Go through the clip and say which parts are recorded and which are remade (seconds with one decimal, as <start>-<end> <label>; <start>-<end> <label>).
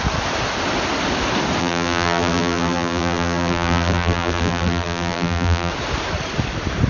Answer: 0.0-1.6 recorded; 1.6-5.7 remade; 5.7-6.9 recorded